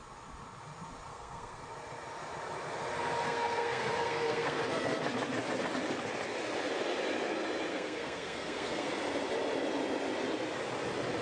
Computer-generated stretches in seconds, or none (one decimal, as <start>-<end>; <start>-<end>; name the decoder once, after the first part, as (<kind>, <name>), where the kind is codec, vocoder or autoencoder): 1.1-1.6 (codec, SNAC); 3.2-4.6; 7.7-8.9